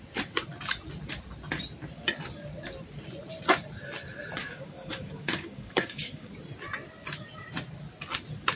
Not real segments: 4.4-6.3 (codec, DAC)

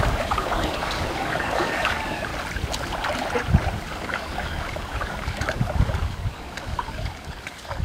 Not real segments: 0.0-2.3 (codec, DAC); 3.9-7.8

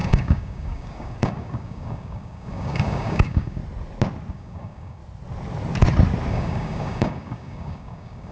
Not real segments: 0.0-3.6 (codec, DAC); 4.3-5.0; 6.3-8.3

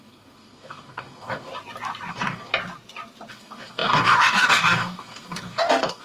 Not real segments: 0.0-1.5 (codec, DAC); 2.1-2.5; 3.3-6.0